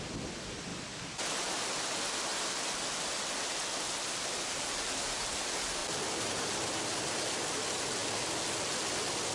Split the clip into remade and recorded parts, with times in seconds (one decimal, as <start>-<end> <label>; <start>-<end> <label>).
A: 0.0-9.3 recorded